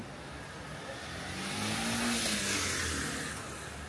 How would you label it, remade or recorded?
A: recorded